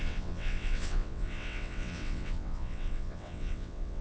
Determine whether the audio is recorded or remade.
remade